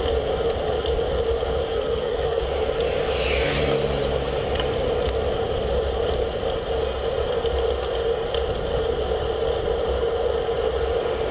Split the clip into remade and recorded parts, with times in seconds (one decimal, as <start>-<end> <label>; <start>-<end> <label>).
0.0-1.7 recorded; 1.7-2.4 remade; 2.4-11.3 recorded